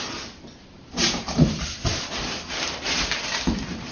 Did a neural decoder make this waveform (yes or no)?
no